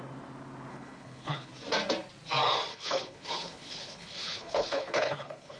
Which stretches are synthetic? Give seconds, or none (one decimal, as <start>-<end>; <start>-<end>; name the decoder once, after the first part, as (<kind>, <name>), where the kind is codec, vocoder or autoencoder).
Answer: 0.7-1.5 (codec, HILCodec); 2.7-5.6